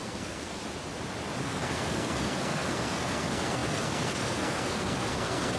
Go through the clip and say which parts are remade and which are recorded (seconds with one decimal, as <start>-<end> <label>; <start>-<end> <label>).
0.0-0.6 remade; 0.6-1.4 recorded; 1.4-5.6 remade